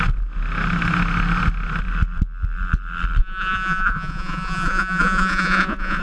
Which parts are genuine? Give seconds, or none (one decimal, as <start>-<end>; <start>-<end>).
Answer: 0.0-3.2